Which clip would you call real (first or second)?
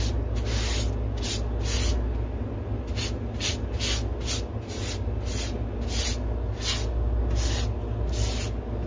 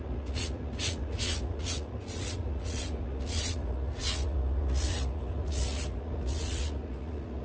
first